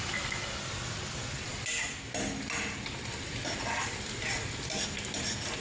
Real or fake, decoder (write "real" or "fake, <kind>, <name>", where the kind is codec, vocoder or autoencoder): real